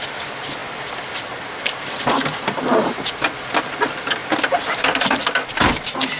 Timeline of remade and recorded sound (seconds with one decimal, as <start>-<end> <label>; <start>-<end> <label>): 0.0-6.2 recorded